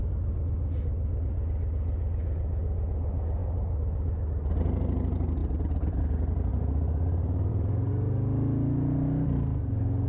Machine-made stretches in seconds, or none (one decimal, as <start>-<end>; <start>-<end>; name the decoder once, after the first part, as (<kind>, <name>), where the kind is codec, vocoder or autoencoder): 3.4-4.2 (vocoder, BigVGAN v2); 5.4-6.0; 6.5-7.9